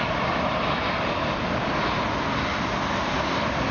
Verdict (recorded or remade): recorded